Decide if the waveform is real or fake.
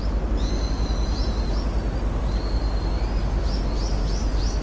real